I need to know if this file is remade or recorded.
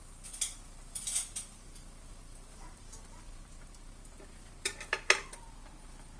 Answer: recorded